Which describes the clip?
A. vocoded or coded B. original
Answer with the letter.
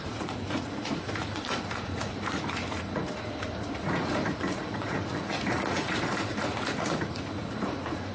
A